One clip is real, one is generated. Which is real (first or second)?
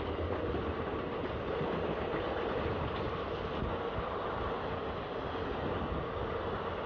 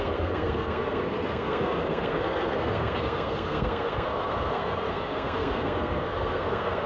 first